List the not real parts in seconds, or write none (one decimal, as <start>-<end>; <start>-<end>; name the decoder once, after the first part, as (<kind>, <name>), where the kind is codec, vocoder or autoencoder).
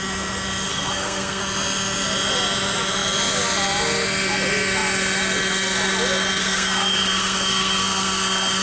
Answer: 0.7-1.4 (codec, SNAC); 6.4-8.6